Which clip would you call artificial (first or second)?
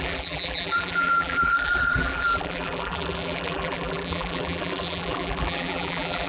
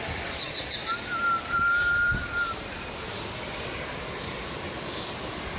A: first